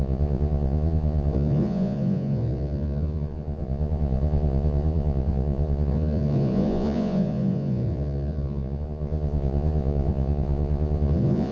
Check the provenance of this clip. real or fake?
fake